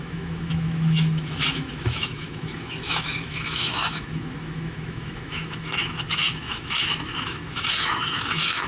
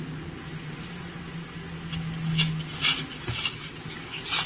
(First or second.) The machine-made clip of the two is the first